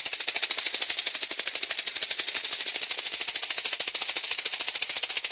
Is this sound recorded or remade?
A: recorded